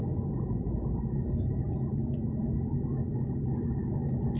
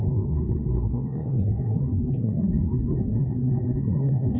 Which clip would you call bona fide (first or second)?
first